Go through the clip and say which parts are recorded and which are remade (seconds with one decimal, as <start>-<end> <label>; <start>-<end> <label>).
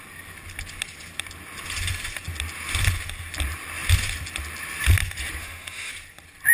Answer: 0.0-5.4 recorded; 5.4-5.9 remade; 5.9-6.5 recorded